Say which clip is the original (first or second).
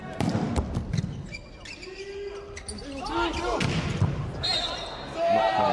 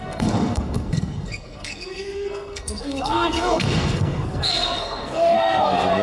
first